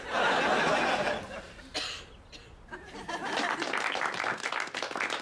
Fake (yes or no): no